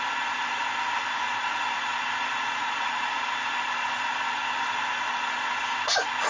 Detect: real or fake real